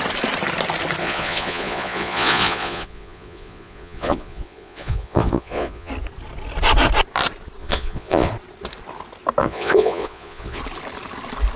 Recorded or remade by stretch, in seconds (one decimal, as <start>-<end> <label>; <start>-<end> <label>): 0.0-1.0 recorded; 1.0-5.9 remade; 5.9-7.6 recorded; 7.6-8.3 remade; 8.3-9.4 recorded; 9.4-10.6 remade; 10.6-11.6 recorded